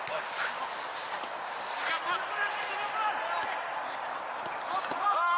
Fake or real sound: real